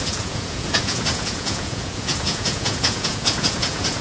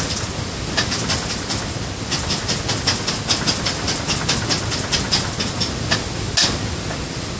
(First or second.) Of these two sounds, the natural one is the second